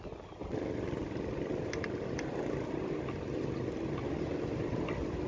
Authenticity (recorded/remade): recorded